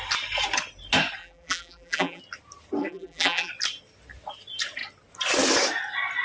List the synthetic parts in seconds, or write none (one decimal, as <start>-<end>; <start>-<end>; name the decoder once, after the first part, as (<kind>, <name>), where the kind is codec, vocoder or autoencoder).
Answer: 1.2-2.2 (vocoder, BigVGAN v2); 2.8-3.5